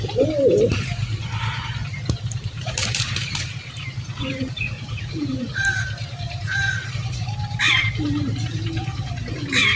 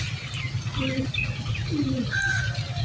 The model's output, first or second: first